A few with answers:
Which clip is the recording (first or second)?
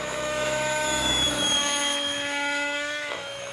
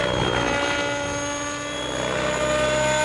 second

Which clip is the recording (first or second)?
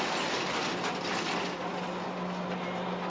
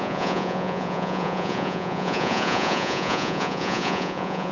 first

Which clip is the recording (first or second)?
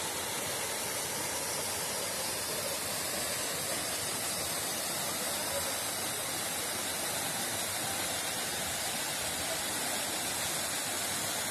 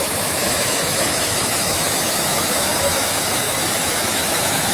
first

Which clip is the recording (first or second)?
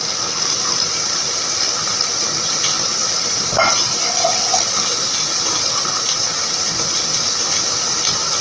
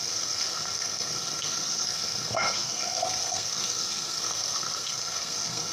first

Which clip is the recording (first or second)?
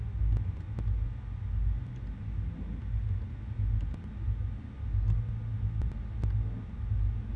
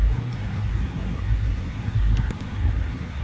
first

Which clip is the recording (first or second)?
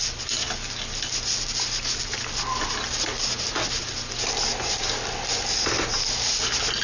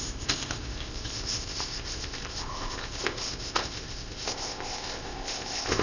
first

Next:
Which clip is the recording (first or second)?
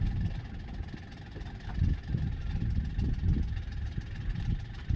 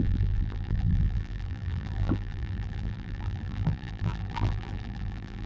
first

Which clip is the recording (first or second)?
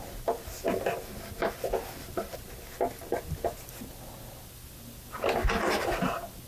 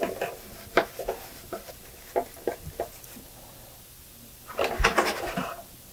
first